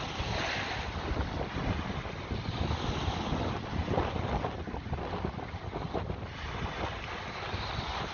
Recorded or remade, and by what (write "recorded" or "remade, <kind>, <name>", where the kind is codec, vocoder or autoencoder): recorded